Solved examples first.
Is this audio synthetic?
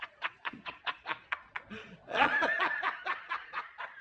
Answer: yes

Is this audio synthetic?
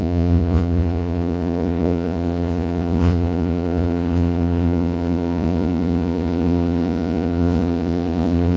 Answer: yes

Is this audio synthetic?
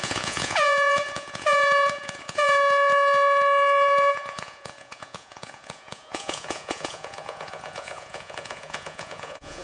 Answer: yes